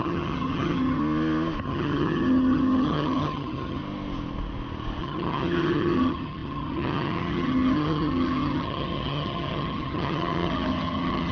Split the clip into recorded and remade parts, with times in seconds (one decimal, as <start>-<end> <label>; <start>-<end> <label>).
0.0-1.0 remade; 1.0-1.6 recorded; 1.6-3.8 remade; 3.8-5.0 recorded; 5.0-11.3 remade